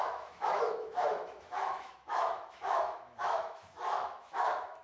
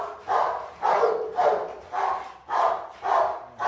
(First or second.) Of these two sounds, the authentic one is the second